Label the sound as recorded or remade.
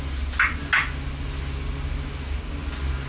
recorded